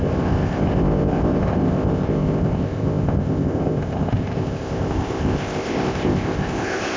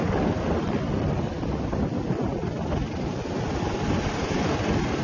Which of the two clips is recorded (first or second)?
second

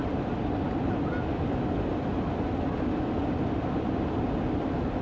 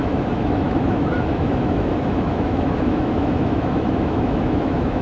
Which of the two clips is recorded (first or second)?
first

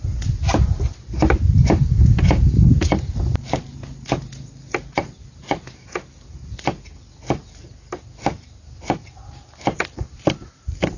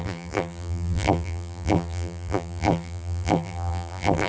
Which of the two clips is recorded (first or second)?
first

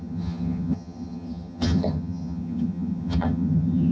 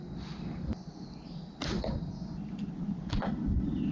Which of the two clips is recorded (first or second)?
second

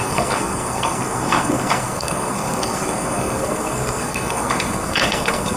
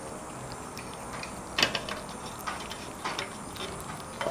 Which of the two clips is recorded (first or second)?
second